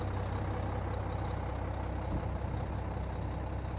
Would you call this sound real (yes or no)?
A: yes